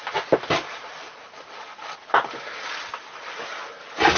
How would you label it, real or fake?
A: real